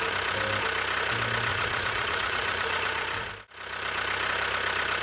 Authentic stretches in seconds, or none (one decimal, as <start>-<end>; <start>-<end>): 0.0-1.5; 3.3-5.0